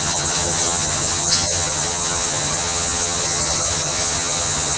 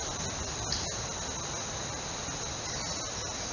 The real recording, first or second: second